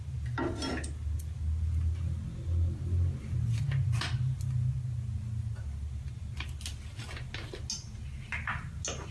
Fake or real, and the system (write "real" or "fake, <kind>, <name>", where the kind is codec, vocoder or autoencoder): real